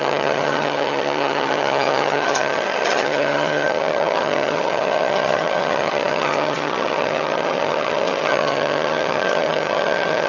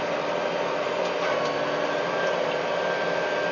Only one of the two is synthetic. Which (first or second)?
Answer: first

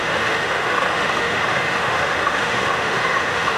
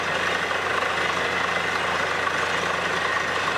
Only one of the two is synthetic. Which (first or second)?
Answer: first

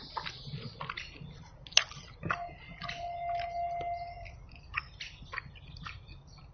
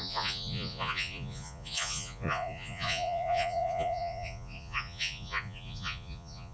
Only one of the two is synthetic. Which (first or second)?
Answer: second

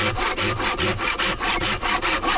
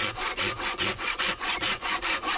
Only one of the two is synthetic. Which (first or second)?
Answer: second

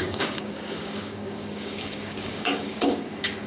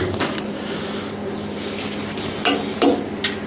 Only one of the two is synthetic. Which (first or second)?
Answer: first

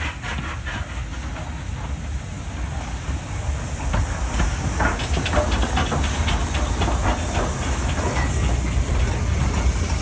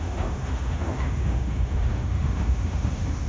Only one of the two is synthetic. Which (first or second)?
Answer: second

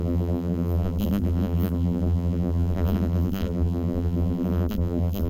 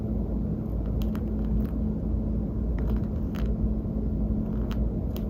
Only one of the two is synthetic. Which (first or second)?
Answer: first